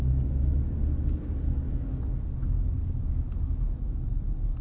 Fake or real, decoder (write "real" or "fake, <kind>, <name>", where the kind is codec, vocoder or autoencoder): real